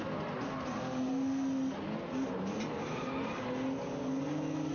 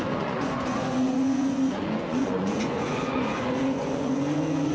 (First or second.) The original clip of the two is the first